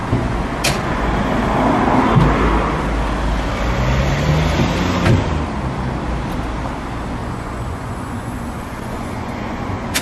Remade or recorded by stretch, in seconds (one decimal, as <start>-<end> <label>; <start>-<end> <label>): 0.0-1.3 remade; 1.3-7.2 recorded; 7.2-10.0 remade